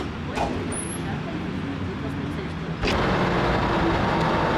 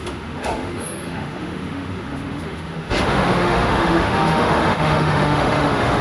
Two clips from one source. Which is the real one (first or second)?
first